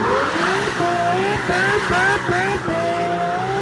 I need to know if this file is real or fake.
real